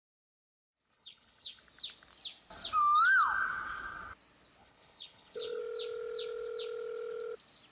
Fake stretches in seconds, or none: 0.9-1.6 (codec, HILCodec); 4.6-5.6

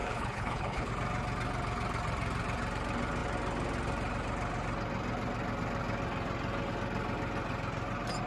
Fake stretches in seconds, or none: 0.0-0.9 (codec, HILCodec)

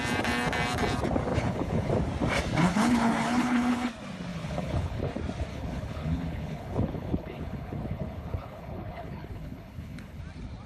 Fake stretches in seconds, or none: 1.3-1.9 (codec, HILCodec); 2.7-3.9; 4.3-5.1; 5.5-10.2

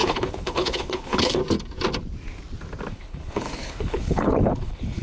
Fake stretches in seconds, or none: 0.0-1.4 (codec, HILCodec); 2.9-5.0

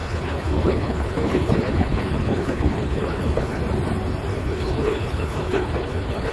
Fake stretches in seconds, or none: 0.0-3.6 (codec, HILCodec); 4.3-6.3